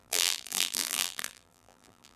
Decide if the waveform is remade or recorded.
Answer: remade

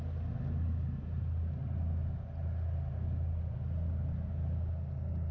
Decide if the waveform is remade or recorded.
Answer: recorded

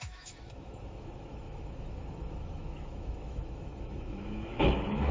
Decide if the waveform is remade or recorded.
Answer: remade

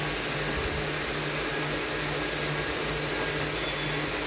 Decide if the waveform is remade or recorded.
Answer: recorded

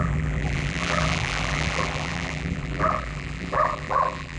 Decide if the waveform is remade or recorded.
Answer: remade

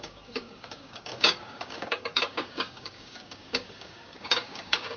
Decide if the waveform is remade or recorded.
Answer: remade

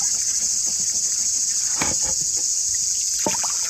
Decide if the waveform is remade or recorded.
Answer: recorded